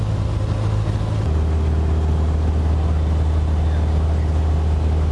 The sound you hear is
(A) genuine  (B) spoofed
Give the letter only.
A